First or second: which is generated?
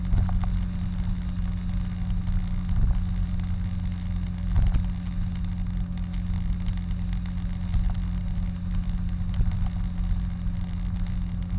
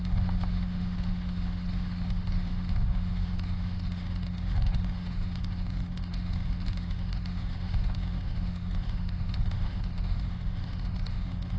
second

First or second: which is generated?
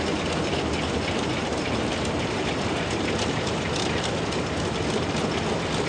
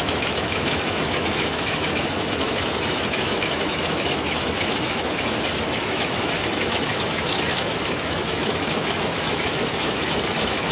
second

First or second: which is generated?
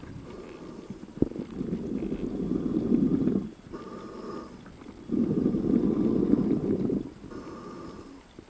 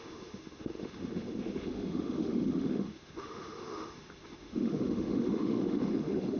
second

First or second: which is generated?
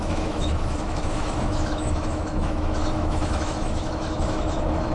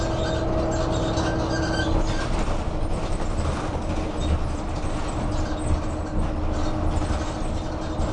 first